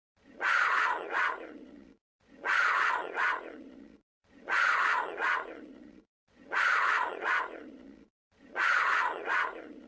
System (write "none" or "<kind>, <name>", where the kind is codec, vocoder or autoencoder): vocoder, Vocos